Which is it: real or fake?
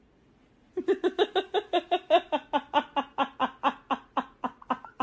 real